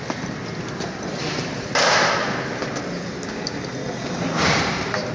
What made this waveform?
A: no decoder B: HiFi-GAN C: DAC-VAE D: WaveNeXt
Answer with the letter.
A